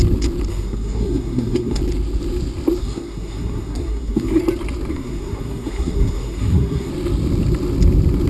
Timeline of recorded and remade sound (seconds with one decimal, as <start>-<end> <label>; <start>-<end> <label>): 0.0-0.5 recorded; 0.5-1.8 remade; 1.8-2.8 recorded; 2.8-4.4 remade; 4.4-4.9 recorded; 4.9-6.9 remade; 6.9-8.3 recorded